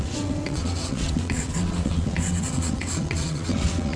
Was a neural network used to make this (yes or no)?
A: yes